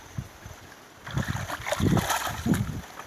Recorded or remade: recorded